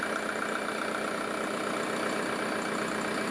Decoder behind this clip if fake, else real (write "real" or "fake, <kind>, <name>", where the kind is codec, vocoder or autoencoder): real